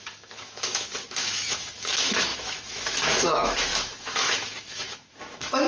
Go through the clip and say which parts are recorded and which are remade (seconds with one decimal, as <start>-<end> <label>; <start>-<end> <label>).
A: 0.0-5.7 remade